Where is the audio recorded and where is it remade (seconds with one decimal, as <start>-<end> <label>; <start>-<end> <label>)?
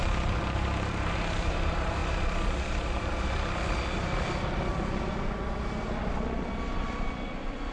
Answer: 0.0-7.7 recorded